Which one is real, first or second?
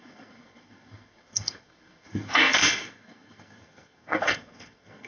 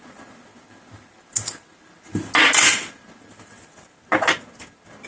second